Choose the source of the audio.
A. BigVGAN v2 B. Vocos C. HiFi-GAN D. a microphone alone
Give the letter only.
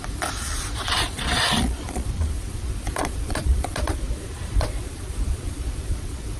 B